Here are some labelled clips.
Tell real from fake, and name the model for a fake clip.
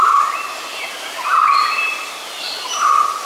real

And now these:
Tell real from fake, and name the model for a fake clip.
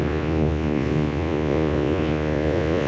fake, vocoder, Vocos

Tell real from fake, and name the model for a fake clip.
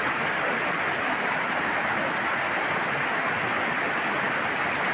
real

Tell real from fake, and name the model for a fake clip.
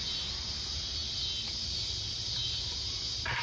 real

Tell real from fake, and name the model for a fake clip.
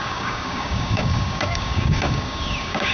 fake, codec, DAC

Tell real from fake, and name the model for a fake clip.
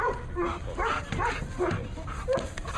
real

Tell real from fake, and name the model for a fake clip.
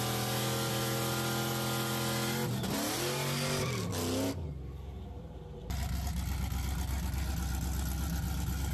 real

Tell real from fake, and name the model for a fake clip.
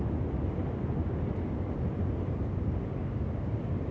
real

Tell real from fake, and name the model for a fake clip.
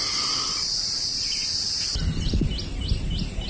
real